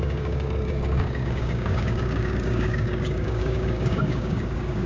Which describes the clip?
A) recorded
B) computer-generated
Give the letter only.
B